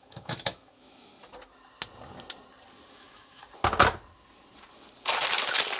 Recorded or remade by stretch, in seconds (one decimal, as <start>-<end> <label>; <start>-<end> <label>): 0.0-1.1 remade; 1.1-2.9 recorded; 2.9-3.4 remade; 3.4-5.8 recorded